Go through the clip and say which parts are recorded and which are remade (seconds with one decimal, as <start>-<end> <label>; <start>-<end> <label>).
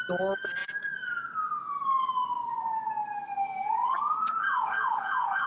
0.0-3.8 recorded; 3.8-5.5 remade